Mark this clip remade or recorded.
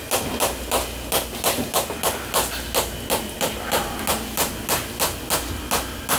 recorded